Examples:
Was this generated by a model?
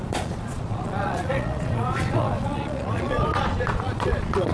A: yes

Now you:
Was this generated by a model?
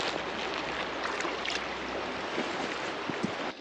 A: no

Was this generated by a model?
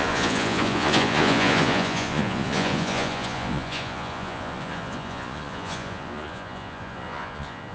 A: yes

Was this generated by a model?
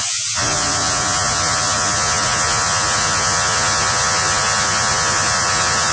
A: yes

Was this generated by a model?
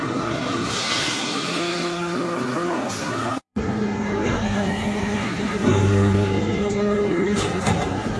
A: yes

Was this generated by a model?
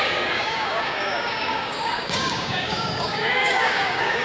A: yes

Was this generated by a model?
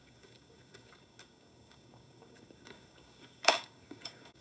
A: yes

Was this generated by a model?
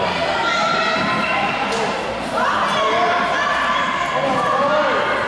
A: no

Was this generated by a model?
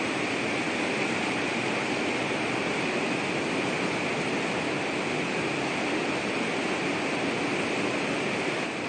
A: no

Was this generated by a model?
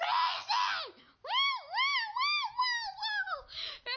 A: no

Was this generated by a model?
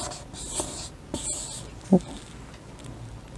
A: no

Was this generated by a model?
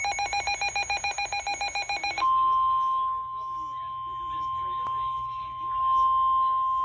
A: no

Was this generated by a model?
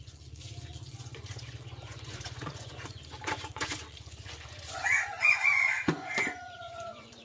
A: yes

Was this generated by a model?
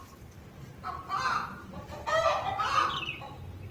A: no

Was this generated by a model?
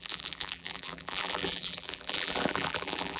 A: yes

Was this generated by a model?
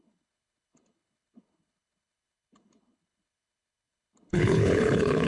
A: yes